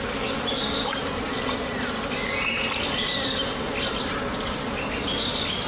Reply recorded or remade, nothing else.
recorded